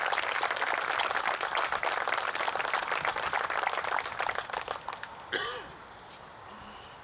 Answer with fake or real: real